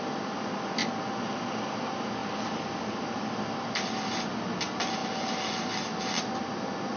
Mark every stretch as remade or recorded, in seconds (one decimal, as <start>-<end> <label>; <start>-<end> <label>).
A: 0.0-7.0 recorded